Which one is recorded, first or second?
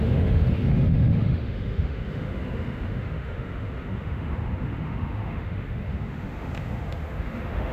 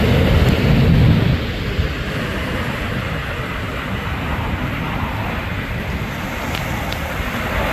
second